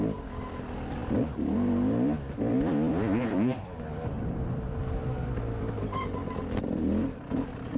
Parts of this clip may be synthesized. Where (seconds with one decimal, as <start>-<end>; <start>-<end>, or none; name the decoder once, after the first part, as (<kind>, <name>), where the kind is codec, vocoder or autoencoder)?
1.0-5.7 (vocoder, BigVGAN v2)